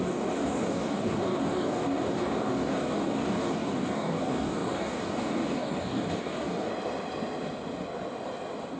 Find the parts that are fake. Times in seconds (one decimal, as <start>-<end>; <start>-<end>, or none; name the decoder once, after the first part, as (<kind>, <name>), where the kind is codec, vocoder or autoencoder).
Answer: 0.0-6.7 (codec, DAC)